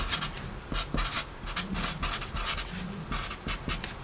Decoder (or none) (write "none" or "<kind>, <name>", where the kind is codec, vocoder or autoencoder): none